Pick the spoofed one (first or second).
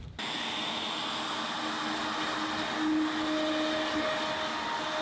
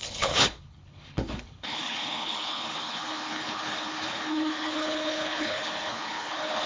second